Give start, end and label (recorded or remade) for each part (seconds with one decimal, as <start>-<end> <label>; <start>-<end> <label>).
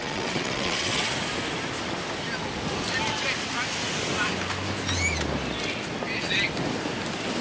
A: 0.0-1.1 remade; 1.1-7.4 recorded